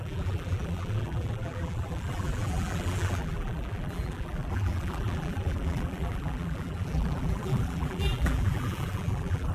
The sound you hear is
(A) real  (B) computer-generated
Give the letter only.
B